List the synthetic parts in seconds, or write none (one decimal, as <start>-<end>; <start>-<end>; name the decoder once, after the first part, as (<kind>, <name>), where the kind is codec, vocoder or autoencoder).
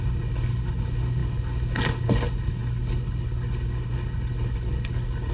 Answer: 0.0-5.3 (codec, HILCodec)